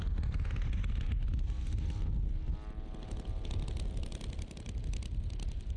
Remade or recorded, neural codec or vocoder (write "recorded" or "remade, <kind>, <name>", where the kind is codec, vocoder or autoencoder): recorded